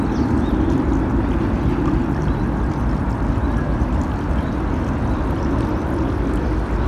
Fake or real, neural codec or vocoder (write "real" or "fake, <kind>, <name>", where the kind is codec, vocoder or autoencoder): real